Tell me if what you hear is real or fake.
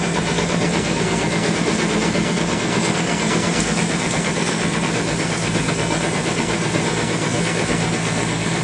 fake